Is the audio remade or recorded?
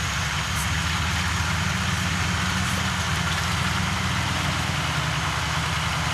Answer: recorded